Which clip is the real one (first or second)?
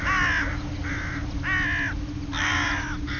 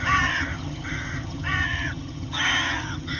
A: first